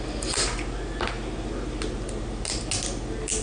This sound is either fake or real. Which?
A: real